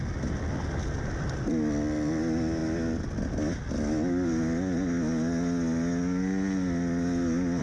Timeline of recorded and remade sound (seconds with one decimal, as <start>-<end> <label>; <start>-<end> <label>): 0.0-7.6 recorded